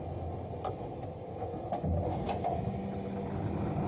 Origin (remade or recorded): recorded